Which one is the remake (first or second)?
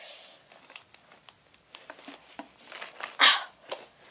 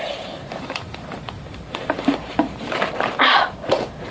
second